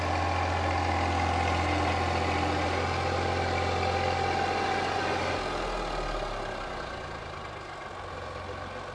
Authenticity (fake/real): real